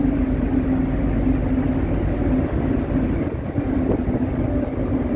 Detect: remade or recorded recorded